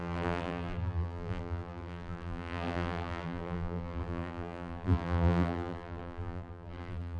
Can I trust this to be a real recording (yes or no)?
no